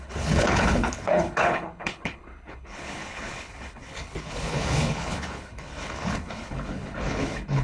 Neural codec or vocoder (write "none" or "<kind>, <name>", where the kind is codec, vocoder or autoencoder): codec, HILCodec